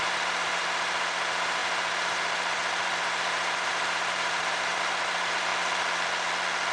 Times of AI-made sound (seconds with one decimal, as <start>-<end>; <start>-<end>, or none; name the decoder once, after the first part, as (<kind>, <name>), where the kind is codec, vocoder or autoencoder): 0.0-5.5 (vocoder, BigVGAN v2)